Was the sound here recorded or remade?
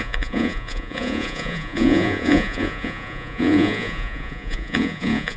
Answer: remade